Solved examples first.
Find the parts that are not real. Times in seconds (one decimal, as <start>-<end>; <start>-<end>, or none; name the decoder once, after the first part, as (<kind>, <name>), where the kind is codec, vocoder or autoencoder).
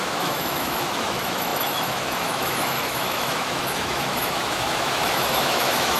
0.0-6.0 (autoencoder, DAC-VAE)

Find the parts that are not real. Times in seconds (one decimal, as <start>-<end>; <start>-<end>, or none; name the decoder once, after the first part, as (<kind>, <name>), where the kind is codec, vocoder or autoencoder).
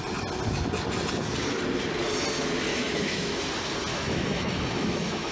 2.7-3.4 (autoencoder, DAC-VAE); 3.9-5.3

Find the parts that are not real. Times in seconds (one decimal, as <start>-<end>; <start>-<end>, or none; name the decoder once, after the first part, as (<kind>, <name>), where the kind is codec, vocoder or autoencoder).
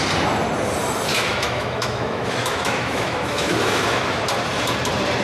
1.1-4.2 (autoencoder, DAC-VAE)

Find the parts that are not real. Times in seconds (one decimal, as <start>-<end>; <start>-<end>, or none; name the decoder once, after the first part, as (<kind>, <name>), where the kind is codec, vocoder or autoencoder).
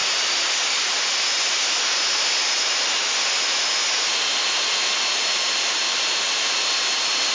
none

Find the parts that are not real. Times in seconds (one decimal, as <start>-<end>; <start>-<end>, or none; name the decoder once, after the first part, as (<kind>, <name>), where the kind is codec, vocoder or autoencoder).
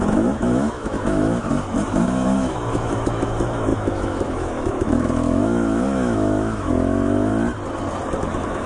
0.0-7.3 (autoencoder, DAC-VAE); 8.2-8.7